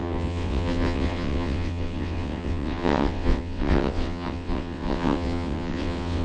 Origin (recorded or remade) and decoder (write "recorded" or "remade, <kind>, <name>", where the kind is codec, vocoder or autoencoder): remade, vocoder, WaveNeXt